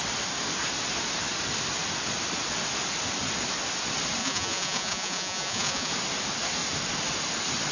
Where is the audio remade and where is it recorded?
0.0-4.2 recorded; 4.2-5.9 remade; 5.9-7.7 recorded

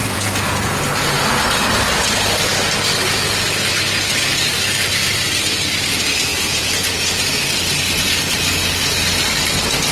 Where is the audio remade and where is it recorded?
0.0-0.8 remade; 0.8-6.3 recorded; 6.3-7.4 remade; 7.4-9.9 recorded

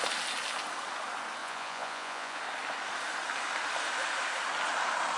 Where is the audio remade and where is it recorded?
0.0-1.4 recorded; 1.4-2.4 remade; 2.4-5.2 recorded

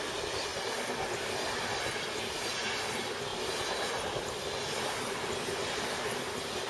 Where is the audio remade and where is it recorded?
0.0-6.7 recorded

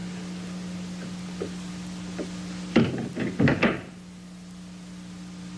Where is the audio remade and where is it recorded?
0.0-5.6 recorded

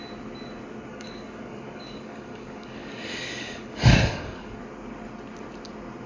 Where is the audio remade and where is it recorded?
0.0-0.9 recorded; 0.9-4.6 remade; 4.6-6.1 recorded

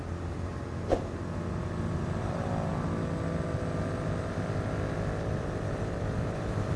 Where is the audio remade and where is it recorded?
0.0-0.5 remade; 0.5-1.0 recorded; 1.0-2.7 remade; 2.7-5.4 recorded; 5.4-6.8 remade